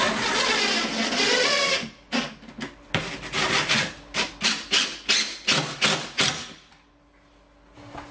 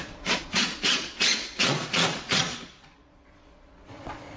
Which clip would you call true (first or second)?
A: first